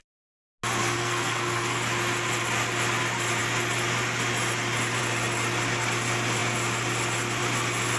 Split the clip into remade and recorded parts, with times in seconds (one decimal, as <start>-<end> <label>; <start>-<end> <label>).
0.0-0.8 recorded; 0.8-1.8 remade; 1.8-8.0 recorded